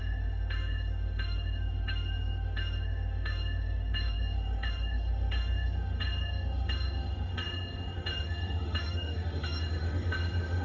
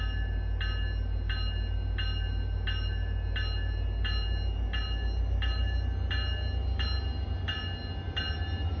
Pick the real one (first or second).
second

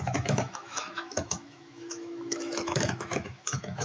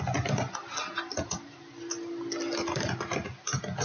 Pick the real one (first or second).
second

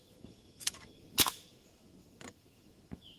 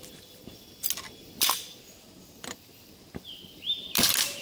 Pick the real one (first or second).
second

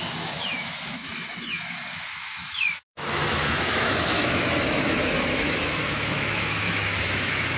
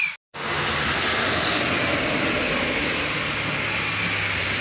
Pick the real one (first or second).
second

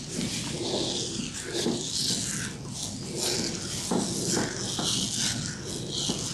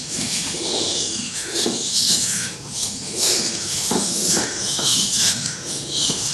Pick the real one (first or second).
first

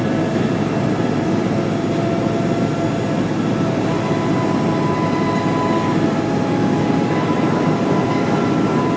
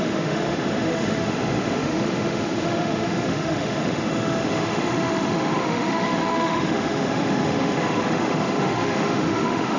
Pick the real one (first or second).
first